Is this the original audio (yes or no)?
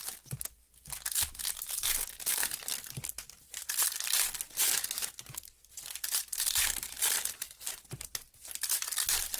yes